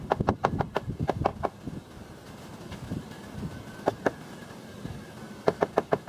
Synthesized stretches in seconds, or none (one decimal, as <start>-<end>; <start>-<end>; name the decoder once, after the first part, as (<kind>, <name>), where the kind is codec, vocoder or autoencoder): none